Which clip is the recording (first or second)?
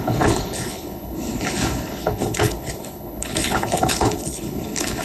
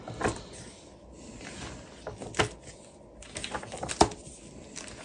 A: second